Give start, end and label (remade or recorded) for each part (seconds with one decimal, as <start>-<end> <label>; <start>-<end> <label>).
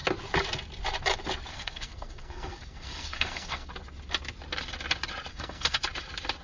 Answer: 0.0-1.5 recorded; 1.5-3.7 remade; 3.7-5.3 recorded; 5.3-5.8 remade; 5.8-6.4 recorded